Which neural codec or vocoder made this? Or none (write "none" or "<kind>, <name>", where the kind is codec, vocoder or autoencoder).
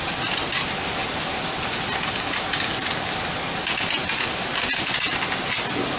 none